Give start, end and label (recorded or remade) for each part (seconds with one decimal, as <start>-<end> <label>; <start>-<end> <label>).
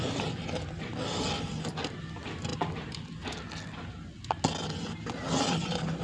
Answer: 0.0-6.0 recorded